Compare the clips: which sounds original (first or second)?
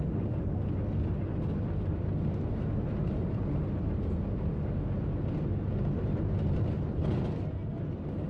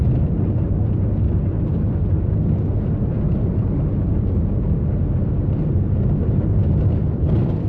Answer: first